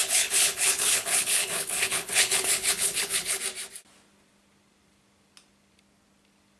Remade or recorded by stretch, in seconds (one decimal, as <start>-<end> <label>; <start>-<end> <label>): 0.0-3.4 remade; 3.4-6.6 recorded